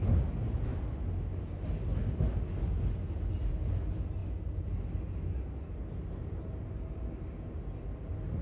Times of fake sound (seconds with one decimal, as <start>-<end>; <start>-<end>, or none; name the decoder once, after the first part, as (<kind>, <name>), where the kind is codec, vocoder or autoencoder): none